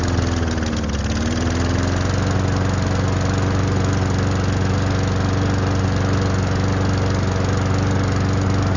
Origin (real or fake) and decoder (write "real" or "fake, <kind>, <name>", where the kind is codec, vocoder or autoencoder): real